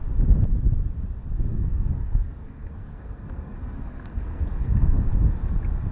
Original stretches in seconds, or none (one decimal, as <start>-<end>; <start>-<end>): 0.0-1.5; 5.0-5.9